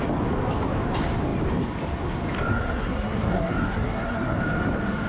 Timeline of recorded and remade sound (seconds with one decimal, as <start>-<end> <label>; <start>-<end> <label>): 0.0-2.5 recorded; 2.5-4.4 remade; 4.4-5.1 recorded